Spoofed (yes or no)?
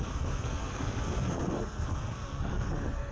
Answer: yes